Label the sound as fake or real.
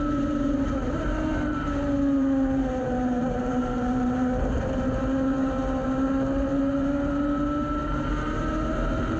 fake